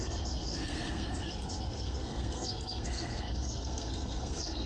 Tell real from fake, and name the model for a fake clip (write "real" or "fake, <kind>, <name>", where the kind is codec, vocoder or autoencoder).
fake, codec, SNAC